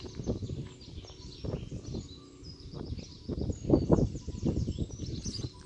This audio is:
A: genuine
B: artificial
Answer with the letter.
A